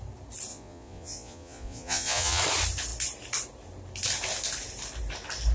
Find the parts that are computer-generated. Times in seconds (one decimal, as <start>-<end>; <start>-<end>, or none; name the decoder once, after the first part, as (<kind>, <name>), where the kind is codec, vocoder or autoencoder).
0.5-2.4 (vocoder, Vocos)